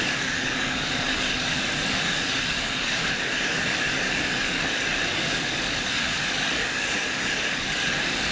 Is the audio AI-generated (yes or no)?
yes